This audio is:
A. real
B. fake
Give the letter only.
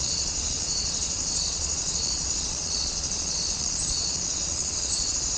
B